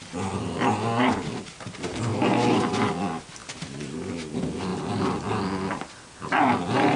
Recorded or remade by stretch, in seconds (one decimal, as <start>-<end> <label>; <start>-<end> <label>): 0.0-7.0 recorded